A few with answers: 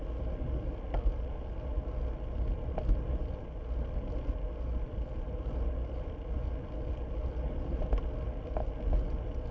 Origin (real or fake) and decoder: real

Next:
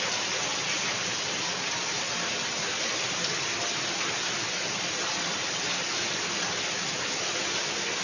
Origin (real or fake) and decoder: real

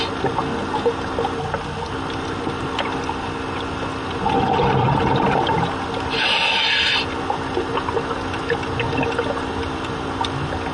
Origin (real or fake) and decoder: real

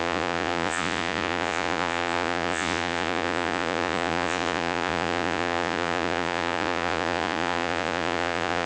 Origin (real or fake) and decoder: fake, vocoder, Vocos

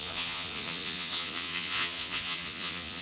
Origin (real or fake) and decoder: fake, vocoder, Vocos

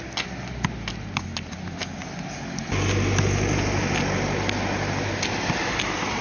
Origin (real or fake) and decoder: real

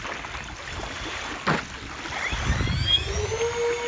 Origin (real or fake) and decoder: real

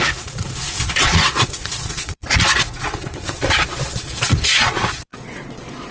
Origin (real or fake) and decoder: fake, vocoder, Vocos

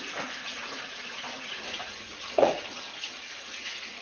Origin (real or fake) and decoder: fake, vocoder, Vocos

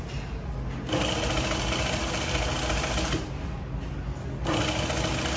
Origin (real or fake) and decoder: real